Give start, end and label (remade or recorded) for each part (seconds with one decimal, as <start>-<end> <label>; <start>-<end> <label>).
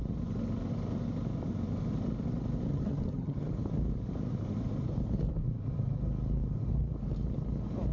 0.0-2.7 recorded; 2.7-3.5 remade; 3.5-7.9 recorded